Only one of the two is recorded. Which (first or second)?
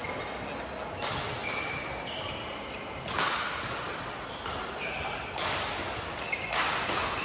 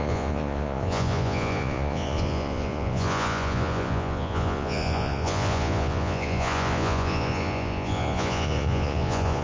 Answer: first